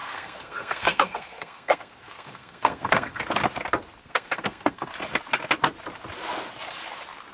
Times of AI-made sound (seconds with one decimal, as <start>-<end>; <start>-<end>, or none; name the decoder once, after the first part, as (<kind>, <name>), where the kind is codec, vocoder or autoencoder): 0.0-3.2 (codec, SNAC); 4.0-4.9